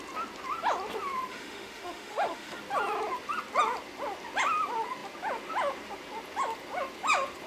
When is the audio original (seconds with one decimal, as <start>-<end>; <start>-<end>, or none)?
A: 0.0-1.3; 2.6-7.5